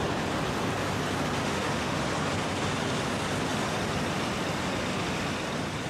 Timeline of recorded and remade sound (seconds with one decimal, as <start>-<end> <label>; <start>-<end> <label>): 0.0-1.4 recorded; 1.4-2.0 remade; 2.0-5.9 recorded